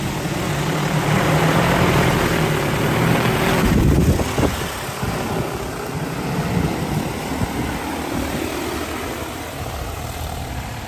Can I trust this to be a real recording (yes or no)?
yes